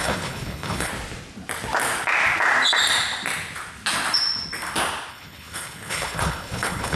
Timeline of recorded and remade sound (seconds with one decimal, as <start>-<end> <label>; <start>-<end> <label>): 0.0-0.9 remade; 0.9-5.1 recorded; 5.1-7.0 remade